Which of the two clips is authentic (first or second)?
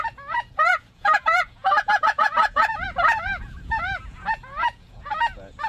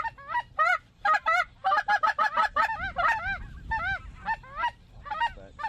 second